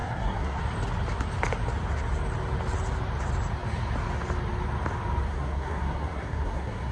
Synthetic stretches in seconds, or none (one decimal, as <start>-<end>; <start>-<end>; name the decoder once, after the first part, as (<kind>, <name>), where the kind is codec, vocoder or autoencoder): 0.0-0.6 (codec, SNAC); 5.3-6.9